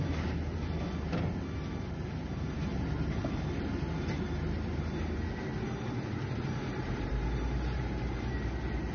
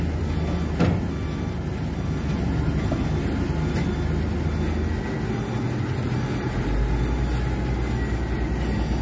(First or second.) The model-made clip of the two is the first